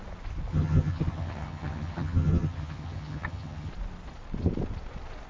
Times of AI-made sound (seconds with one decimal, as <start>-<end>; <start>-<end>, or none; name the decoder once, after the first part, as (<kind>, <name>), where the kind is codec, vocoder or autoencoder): 0.5-3.7 (vocoder, HiFi-GAN)